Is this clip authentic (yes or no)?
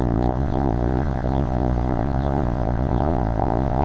no